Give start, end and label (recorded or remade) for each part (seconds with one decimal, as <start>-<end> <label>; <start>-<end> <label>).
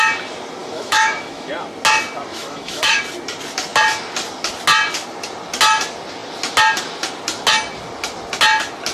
0.0-0.6 recorded; 0.6-1.5 remade; 1.5-2.3 recorded; 2.3-3.0 remade; 3.0-8.9 recorded